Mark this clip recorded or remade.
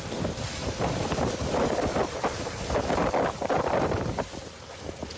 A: recorded